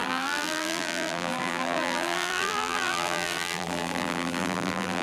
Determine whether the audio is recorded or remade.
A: remade